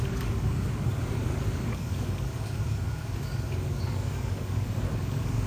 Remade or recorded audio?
remade